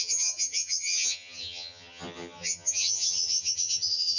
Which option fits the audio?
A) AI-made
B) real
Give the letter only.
A